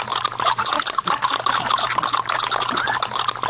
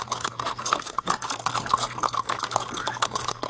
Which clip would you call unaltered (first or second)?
first